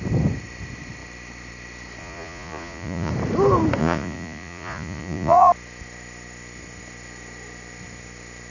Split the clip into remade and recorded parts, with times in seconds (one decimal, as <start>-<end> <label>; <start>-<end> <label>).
0.0-2.0 recorded; 2.0-3.1 remade; 3.1-3.8 recorded; 3.8-5.5 remade; 5.5-8.5 recorded